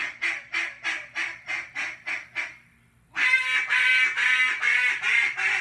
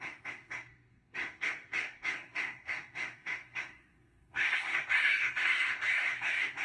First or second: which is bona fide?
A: first